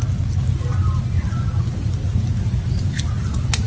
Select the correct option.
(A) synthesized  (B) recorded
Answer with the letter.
B